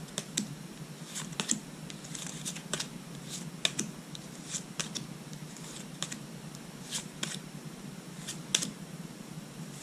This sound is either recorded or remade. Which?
recorded